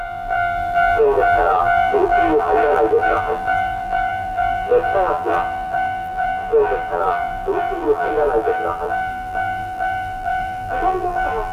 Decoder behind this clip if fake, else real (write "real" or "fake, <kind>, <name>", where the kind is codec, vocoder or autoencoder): fake, vocoder, BigVGAN v2